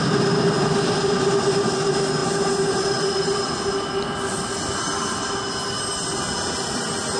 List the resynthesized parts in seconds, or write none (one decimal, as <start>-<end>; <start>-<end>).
none